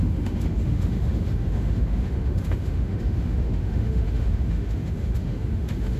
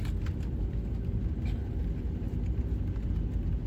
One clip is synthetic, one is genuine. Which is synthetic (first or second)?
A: first